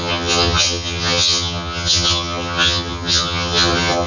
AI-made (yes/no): yes